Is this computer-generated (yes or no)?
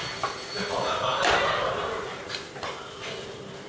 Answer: no